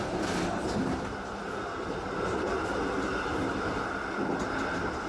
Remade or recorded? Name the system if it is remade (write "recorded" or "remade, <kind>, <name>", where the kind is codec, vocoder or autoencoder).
recorded